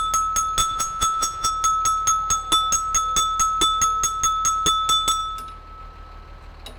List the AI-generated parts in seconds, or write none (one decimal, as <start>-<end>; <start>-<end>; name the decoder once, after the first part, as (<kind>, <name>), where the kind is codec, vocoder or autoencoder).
0.6-1.5 (vocoder, Vocos)